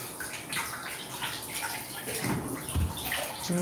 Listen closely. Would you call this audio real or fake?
real